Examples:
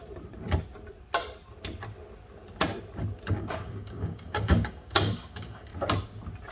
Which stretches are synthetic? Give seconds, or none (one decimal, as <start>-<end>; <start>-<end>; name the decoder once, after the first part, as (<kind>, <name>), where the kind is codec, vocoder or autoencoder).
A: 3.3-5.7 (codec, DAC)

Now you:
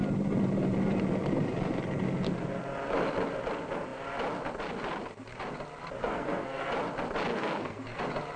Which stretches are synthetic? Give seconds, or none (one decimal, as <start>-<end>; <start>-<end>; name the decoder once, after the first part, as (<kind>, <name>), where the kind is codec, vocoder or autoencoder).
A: 6.0-6.7 (codec, SNAC); 7.3-8.0

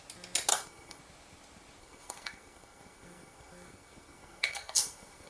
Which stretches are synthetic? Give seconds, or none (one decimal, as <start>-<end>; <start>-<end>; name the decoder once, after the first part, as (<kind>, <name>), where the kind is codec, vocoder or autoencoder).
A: 0.5-1.0 (codec, SNAC); 1.8-5.3

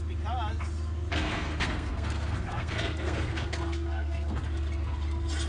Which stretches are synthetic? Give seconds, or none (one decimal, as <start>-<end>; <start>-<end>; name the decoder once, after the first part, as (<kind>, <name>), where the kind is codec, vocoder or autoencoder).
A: 1.1-4.4 (codec, SNAC)

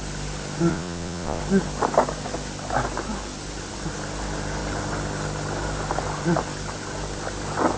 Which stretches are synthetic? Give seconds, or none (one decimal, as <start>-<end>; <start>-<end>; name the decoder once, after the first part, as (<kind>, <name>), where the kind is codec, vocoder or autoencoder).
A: 0.7-1.4 (vocoder, Vocos)

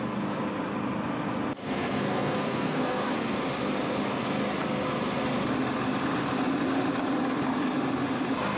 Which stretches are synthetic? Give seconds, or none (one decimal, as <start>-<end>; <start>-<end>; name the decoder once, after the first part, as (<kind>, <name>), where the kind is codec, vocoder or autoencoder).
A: 1.6-3.4 (codec, SNAC)

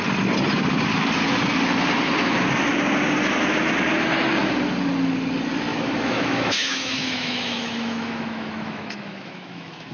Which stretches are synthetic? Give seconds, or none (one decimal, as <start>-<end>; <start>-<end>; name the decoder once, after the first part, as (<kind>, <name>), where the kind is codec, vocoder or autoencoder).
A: 5.7-9.9 (autoencoder, DAC-VAE)